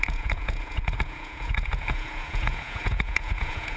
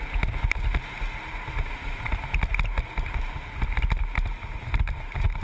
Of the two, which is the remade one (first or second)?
first